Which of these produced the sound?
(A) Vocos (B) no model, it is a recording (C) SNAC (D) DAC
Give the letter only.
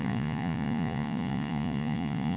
A